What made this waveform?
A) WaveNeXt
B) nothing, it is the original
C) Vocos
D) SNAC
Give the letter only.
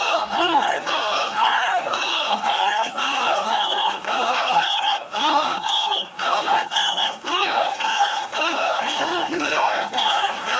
D